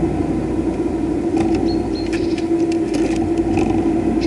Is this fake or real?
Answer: real